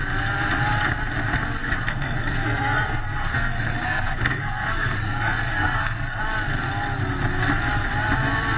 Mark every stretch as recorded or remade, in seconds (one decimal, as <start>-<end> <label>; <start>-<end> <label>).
0.0-1.6 recorded; 1.6-6.2 remade; 6.2-8.6 recorded